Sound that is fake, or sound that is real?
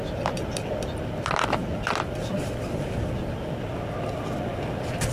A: real